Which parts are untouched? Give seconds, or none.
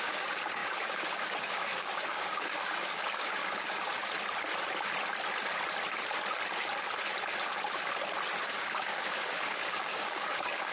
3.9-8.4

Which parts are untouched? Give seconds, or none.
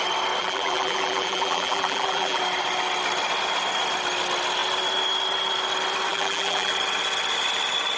0.0-0.4; 2.4-6.1; 6.7-8.0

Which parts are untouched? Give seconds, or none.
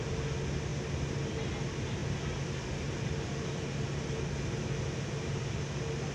0.0-6.1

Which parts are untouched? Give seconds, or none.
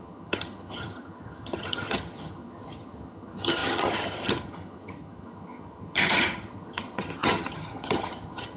none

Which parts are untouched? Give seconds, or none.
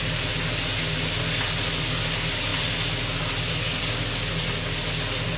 0.0-5.4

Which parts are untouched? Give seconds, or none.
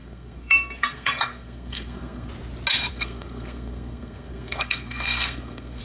2.3-2.9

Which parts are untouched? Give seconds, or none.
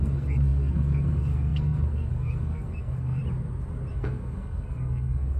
3.2-3.9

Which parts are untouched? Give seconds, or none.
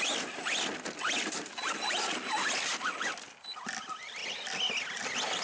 0.0-5.4